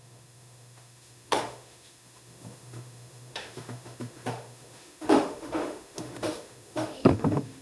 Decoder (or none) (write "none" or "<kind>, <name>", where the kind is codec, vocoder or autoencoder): autoencoder, DAC-VAE